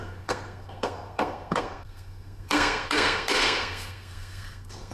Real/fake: fake